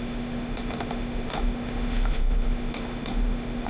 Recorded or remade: remade